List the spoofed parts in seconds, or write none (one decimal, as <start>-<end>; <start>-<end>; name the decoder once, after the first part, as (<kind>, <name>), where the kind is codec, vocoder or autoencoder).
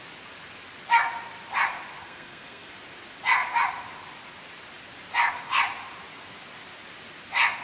2.0-2.7 (codec, SNAC)